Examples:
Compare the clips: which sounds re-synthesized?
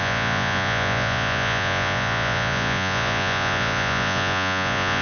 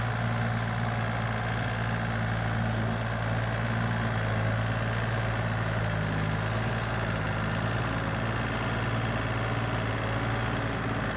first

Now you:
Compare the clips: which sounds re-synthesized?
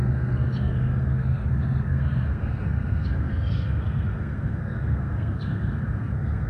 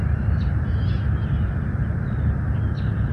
first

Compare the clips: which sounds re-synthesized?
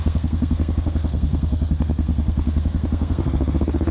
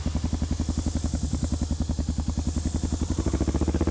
first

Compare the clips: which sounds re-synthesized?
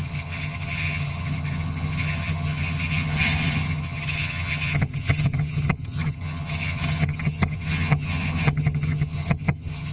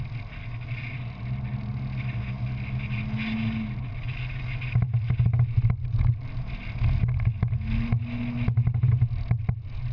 first